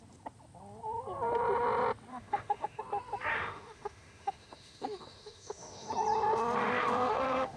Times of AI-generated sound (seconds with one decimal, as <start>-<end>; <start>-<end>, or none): 2.1-2.8; 3.3-5.9; 6.6-7.6